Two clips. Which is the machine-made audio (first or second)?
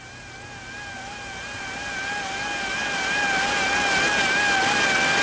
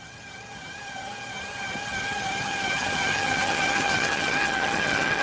second